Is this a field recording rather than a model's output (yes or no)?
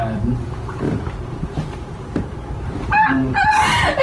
no